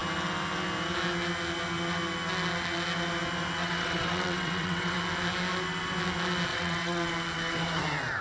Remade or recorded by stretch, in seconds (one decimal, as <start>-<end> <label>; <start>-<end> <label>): 0.0-3.6 recorded; 3.6-5.0 remade; 5.0-6.5 recorded; 6.5-7.1 remade; 7.1-8.2 recorded